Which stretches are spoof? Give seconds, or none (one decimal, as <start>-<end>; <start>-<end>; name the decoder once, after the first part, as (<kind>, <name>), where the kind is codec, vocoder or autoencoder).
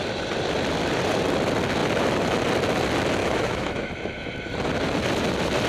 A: 3.2-3.9 (autoencoder, DAC-VAE)